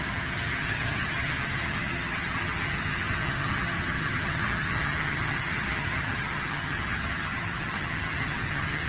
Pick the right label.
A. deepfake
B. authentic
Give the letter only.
A